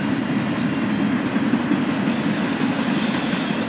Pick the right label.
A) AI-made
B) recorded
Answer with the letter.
B